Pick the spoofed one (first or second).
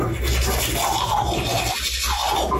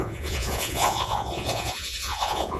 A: second